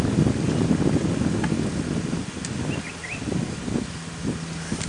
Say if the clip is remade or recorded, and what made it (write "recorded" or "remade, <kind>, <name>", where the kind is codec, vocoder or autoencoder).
recorded